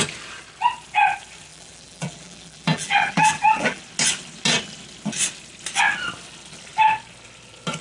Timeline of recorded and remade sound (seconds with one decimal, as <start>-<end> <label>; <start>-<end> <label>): 0.0-1.5 recorded; 1.5-3.8 remade; 3.8-7.8 recorded